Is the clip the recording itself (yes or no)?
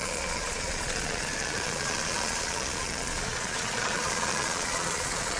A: no